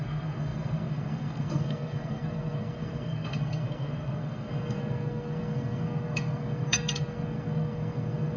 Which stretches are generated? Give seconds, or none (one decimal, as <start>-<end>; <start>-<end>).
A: 0.0-8.4